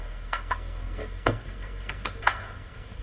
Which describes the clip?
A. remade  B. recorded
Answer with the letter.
A